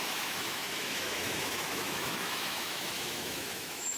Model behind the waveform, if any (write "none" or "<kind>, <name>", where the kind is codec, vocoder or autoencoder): autoencoder, DAC-VAE